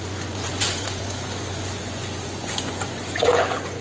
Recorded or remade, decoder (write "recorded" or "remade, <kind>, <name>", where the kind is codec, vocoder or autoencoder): remade, vocoder, Vocos